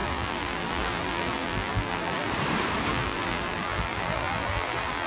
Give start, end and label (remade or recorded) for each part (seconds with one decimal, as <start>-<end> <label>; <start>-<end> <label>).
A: 0.0-2.3 remade; 2.3-2.9 recorded; 2.9-5.1 remade